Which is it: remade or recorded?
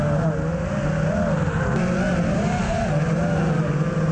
recorded